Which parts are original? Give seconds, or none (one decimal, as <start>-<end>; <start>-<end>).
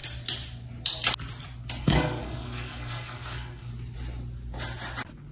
0.0-1.8; 3.7-5.3